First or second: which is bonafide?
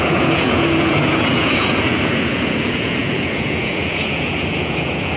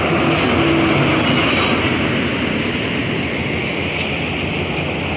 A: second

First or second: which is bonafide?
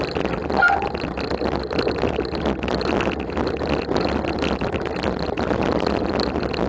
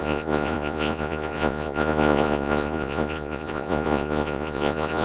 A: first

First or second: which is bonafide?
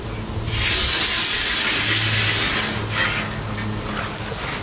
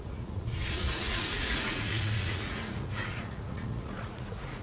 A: first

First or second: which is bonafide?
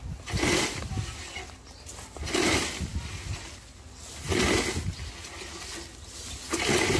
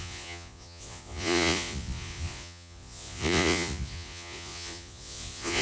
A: first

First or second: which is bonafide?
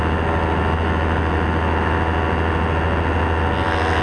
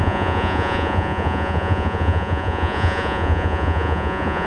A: first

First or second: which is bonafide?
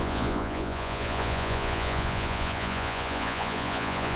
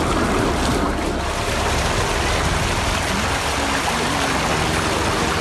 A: second